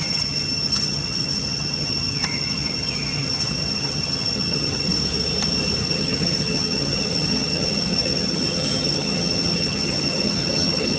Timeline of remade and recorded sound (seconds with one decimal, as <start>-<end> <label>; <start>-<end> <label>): 0.0-4.9 remade; 4.9-5.8 recorded; 5.8-11.0 remade